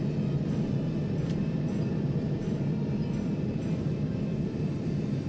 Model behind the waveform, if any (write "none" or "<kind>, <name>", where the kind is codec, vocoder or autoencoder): none